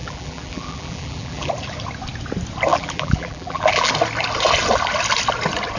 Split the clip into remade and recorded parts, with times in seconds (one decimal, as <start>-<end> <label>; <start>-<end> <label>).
0.0-1.5 remade; 1.5-2.7 recorded; 2.7-3.9 remade; 3.9-5.8 recorded